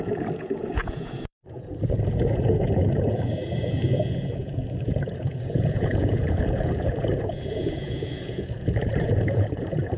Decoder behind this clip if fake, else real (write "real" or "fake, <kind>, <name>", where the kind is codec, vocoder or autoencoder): fake, vocoder, Vocos